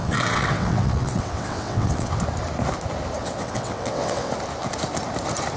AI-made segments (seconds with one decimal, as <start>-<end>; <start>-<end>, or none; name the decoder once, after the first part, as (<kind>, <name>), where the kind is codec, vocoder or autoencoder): 0.0-2.1 (vocoder, WaveNeXt); 3.2-4.3